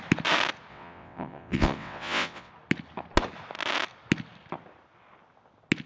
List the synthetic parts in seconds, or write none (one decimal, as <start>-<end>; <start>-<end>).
0.7-2.5